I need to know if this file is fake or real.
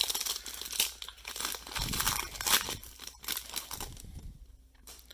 real